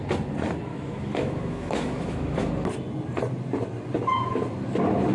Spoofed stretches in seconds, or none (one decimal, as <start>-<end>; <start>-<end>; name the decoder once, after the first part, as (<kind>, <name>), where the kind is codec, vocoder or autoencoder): 0.7-2.5 (autoencoder, DAC-VAE)